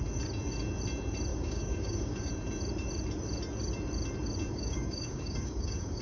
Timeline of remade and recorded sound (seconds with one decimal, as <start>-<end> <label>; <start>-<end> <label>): 0.0-1.3 recorded; 1.3-2.3 remade; 2.3-4.5 recorded; 4.5-6.0 remade